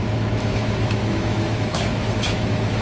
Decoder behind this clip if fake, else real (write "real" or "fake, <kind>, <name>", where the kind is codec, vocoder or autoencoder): fake, autoencoder, DAC-VAE